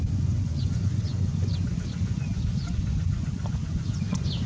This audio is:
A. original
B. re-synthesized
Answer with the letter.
B